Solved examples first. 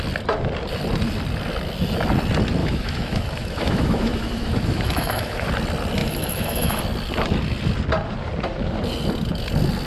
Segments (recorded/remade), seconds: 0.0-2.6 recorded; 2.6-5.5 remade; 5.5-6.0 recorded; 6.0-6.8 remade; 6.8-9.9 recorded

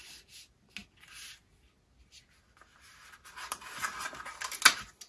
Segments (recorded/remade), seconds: 0.0-5.1 recorded

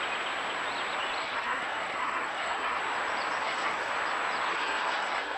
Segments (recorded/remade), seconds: 0.0-1.2 recorded; 1.2-2.8 remade; 2.8-3.4 recorded; 3.4-3.9 remade; 3.9-4.5 recorded; 4.5-5.4 remade